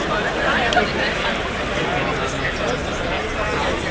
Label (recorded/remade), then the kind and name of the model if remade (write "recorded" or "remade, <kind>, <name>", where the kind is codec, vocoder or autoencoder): recorded